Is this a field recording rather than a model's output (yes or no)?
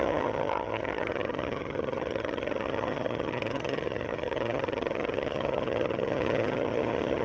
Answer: no